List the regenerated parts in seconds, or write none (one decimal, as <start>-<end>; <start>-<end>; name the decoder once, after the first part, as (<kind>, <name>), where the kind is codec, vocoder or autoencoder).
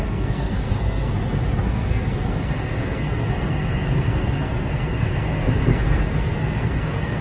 0.0-1.1 (codec, SNAC); 1.6-7.2